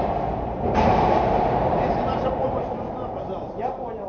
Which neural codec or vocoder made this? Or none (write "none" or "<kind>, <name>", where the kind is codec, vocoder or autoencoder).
vocoder, BigVGAN v2